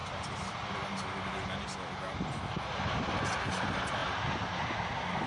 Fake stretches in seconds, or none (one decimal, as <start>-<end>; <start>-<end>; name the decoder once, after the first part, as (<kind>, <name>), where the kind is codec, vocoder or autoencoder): none